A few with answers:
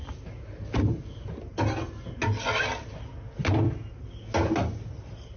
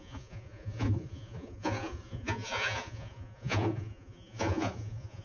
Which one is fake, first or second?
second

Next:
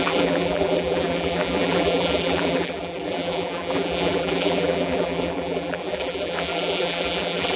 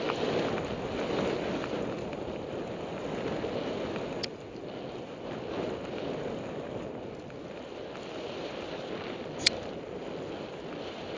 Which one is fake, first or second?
first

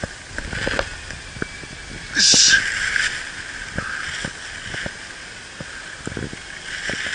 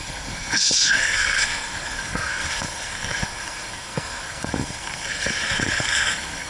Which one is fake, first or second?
second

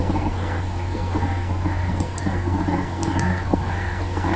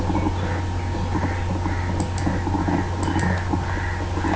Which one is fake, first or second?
first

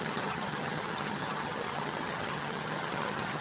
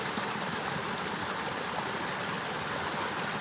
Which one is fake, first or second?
first